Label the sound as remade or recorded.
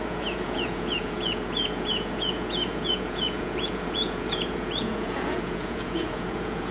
remade